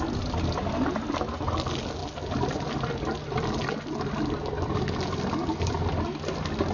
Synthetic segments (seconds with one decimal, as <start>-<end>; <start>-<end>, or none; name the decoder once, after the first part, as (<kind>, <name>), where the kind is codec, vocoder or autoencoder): none